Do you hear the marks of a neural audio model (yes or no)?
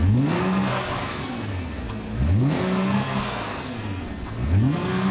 yes